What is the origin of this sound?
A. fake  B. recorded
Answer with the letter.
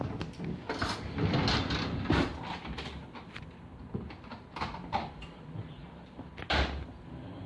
B